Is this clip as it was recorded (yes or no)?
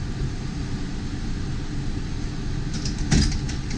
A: yes